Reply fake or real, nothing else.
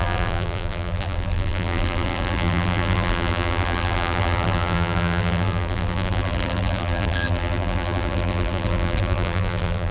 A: fake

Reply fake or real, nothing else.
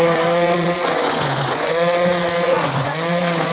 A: fake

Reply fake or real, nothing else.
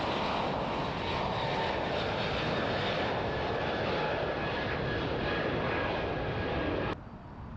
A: real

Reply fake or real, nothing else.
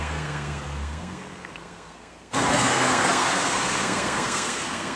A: fake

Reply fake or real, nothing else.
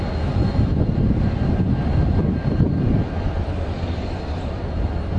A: real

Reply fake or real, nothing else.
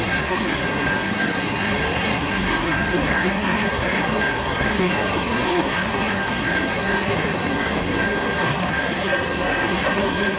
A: fake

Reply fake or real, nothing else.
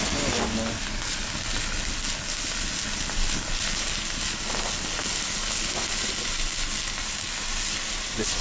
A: real